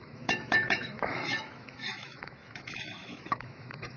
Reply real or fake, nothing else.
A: fake